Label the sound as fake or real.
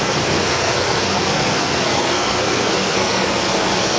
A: fake